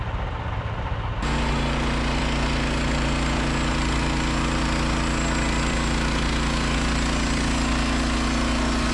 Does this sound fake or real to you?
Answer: real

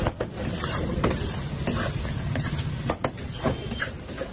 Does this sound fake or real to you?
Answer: real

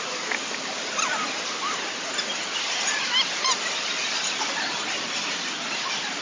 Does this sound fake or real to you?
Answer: real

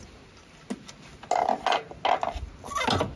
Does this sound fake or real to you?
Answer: real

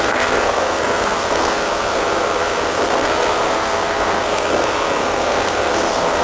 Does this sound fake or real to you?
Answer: fake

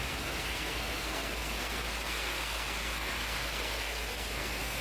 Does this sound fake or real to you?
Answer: fake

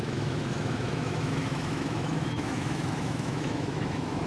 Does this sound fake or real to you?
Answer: fake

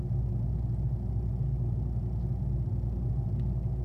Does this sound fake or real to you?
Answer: real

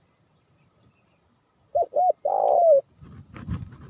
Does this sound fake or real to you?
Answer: real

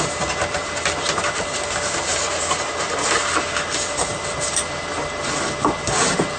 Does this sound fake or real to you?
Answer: real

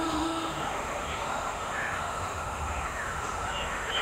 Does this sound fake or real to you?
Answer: fake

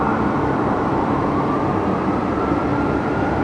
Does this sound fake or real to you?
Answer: real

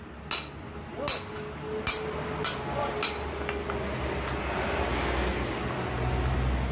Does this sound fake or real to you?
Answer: real